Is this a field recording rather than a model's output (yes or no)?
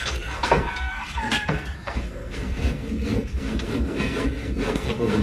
no